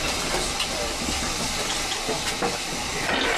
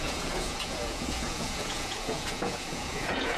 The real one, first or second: first